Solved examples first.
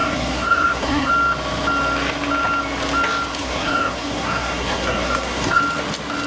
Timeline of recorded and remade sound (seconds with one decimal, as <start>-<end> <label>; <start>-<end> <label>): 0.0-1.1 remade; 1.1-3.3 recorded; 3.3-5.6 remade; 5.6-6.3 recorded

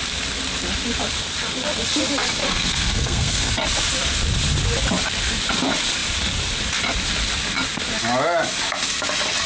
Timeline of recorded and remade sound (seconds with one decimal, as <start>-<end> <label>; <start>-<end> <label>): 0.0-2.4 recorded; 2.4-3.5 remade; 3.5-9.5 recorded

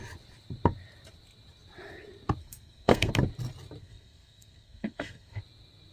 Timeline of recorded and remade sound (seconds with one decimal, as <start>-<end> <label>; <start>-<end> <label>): 0.0-2.4 recorded; 2.4-3.1 remade; 3.1-3.8 recorded; 3.8-5.4 remade; 5.4-5.9 recorded

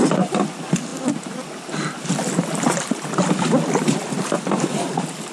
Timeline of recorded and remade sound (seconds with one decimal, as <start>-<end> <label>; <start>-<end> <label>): 0.0-5.3 recorded

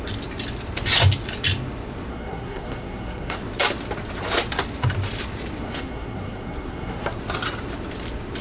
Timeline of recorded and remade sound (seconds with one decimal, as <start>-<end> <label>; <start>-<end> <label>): 0.0-2.1 recorded; 2.1-3.4 remade; 3.4-5.6 recorded; 5.6-7.2 remade; 7.2-8.4 recorded

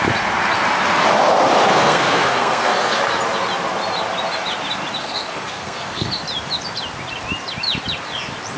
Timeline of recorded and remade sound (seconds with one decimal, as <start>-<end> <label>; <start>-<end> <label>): 0.0-1.7 recorded; 1.7-3.0 remade; 3.0-5.0 recorded; 5.0-6.1 remade; 6.1-8.6 recorded